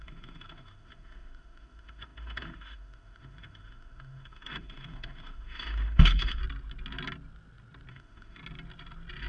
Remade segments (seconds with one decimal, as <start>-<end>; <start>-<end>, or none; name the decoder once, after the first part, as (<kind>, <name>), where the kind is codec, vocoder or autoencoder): 0.0-6.4 (autoencoder, DAC-VAE); 7.9-8.4